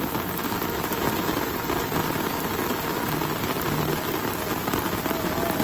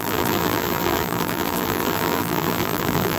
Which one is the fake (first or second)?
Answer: second